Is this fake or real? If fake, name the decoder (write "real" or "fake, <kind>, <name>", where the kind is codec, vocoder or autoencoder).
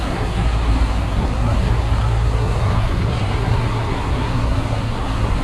fake, codec, SNAC